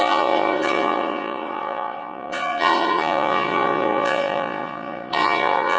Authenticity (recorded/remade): remade